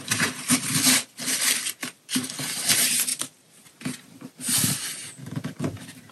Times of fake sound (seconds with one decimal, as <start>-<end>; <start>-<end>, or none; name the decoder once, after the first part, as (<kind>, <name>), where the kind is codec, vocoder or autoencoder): 0.0-3.1 (vocoder, BigVGAN v2); 3.7-5.0; 5.6-6.1